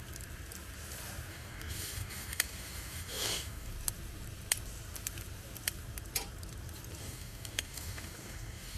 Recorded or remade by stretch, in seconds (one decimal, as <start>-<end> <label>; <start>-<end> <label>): 0.0-1.3 recorded; 1.3-3.7 remade; 3.7-7.0 recorded; 7.0-8.8 remade